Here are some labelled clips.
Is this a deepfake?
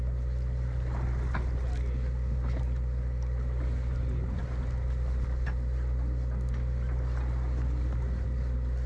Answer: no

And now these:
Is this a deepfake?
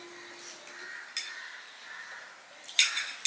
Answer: no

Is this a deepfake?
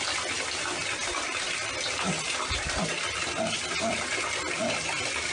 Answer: no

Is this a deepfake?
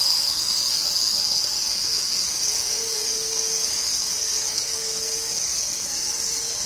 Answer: yes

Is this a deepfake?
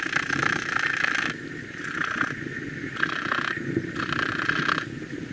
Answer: no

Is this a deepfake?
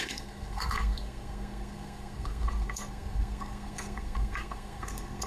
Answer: yes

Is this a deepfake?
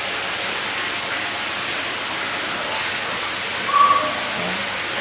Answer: no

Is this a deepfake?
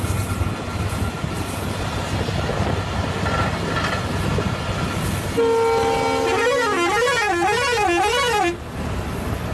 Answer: no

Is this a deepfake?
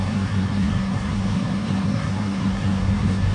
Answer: yes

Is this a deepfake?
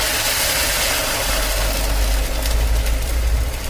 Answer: no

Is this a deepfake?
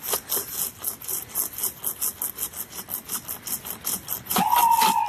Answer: no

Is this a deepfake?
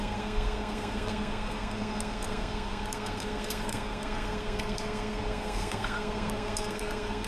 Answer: yes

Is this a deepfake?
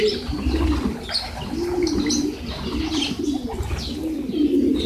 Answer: no